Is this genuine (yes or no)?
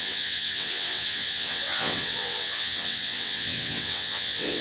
no